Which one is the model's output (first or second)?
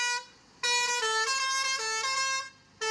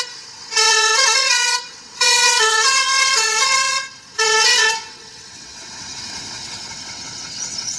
second